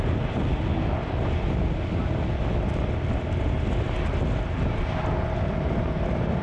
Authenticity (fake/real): real